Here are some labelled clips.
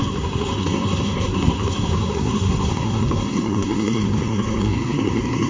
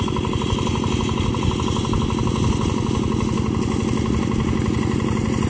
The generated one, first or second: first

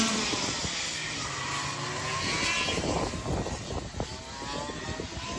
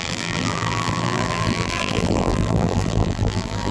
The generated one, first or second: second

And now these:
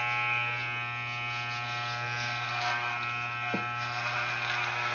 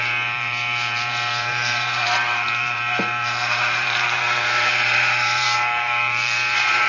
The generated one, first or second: second